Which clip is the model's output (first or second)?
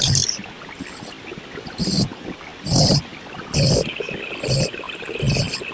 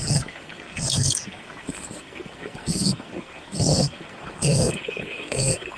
second